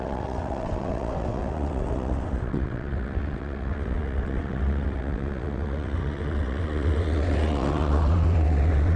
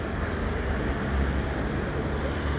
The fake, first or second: first